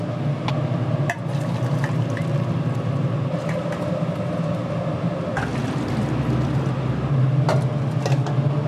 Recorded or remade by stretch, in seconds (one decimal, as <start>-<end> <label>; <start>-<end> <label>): 0.0-5.5 recorded; 5.5-6.9 remade; 6.9-8.7 recorded